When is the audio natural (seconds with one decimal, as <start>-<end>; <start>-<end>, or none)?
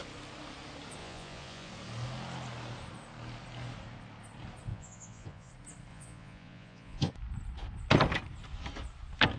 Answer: 0.0-1.0; 1.7-4.7; 5.5-5.9; 7.1-9.4